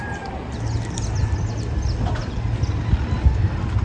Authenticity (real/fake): real